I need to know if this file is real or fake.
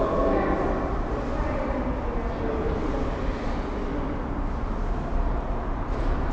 real